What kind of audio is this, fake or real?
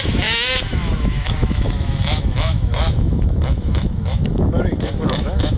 fake